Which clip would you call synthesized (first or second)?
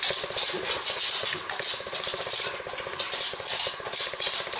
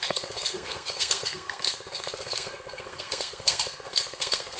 second